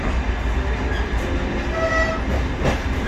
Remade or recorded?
recorded